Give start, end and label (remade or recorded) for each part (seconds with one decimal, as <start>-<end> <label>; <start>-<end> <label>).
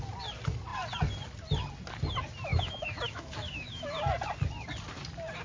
0.0-2.5 recorded; 2.5-4.0 remade; 4.0-5.4 recorded